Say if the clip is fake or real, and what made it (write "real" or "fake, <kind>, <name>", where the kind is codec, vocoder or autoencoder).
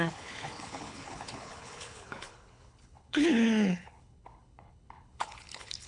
fake, codec, HILCodec